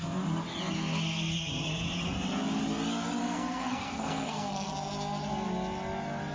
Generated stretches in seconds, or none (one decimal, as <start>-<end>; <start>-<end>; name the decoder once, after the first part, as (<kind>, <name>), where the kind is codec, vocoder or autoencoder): 3.2-4.7 (codec, SNAC)